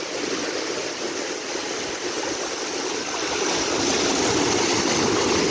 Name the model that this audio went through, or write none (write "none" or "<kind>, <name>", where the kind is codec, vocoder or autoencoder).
none